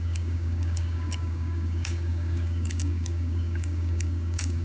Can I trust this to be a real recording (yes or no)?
no